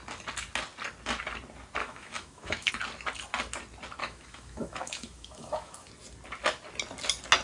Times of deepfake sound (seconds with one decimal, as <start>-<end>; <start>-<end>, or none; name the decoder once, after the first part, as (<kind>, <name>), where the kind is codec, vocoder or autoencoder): 1.8-2.7 (autoencoder, DAC-VAE); 4.0-5.9